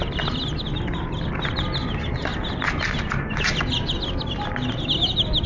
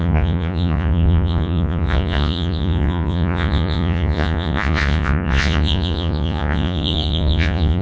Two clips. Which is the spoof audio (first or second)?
second